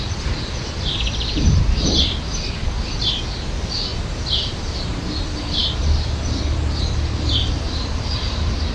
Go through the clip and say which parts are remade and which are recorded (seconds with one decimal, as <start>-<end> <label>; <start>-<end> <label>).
0.0-8.7 recorded

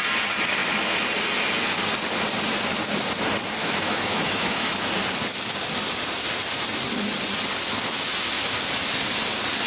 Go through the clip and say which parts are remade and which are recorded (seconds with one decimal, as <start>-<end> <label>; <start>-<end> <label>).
0.0-3.6 recorded; 3.6-4.9 remade; 4.9-9.7 recorded

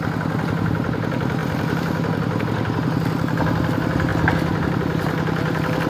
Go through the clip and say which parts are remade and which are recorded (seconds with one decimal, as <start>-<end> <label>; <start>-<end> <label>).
0.0-5.9 recorded

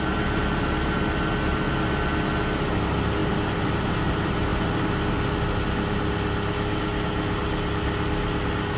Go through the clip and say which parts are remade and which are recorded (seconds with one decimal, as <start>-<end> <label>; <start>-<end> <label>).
0.0-8.8 recorded

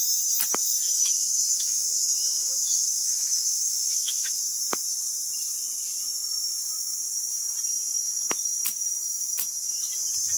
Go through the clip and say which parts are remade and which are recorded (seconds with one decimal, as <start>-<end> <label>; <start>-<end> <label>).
0.0-0.6 recorded; 0.6-4.4 remade; 4.4-10.4 recorded